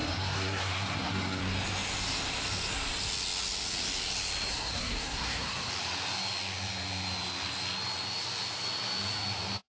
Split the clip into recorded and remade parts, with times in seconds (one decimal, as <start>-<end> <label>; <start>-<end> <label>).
0.0-1.4 remade; 1.4-4.5 recorded; 4.5-5.7 remade; 5.7-9.7 recorded